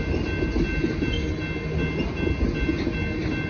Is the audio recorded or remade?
recorded